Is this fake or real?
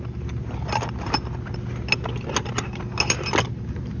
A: real